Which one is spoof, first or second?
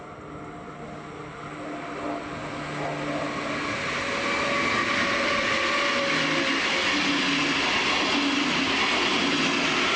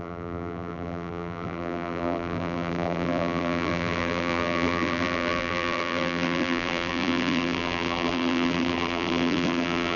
second